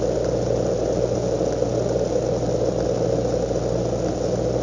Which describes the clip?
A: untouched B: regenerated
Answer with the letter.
A